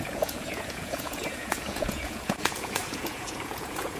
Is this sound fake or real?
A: fake